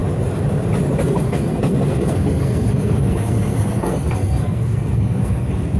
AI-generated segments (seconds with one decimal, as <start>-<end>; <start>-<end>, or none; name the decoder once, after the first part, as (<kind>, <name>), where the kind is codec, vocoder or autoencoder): 1.0-5.8 (codec, SNAC)